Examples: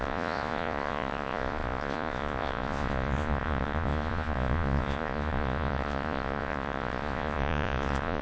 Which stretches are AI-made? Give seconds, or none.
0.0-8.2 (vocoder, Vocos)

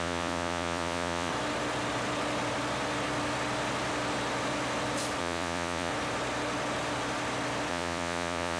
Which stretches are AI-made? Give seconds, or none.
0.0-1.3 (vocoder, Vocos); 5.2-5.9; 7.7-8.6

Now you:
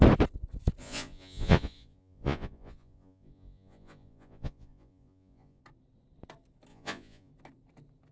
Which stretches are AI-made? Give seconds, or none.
0.8-5.6 (vocoder, Vocos); 6.7-7.3